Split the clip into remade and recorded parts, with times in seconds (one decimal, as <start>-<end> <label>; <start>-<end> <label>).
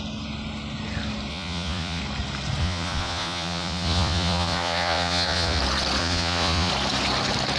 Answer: 0.0-1.3 recorded; 1.3-2.0 remade; 2.0-2.6 recorded; 2.6-5.6 remade; 5.6-6.0 recorded; 6.0-6.7 remade; 6.7-7.6 recorded